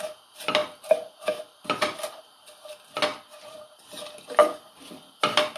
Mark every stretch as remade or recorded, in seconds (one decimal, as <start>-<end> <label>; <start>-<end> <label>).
0.0-0.6 recorded; 0.6-2.2 remade; 2.2-5.6 recorded